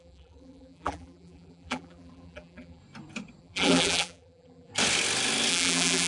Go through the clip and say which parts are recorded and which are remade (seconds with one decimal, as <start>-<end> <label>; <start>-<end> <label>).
0.0-2.8 remade; 2.8-3.4 recorded; 3.4-4.7 remade; 4.7-5.5 recorded; 5.5-6.1 remade